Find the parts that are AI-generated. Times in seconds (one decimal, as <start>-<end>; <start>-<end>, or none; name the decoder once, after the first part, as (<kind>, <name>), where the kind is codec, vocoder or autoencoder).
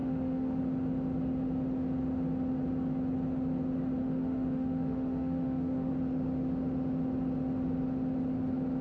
0.0-0.6 (autoencoder, DAC-VAE); 4.0-5.9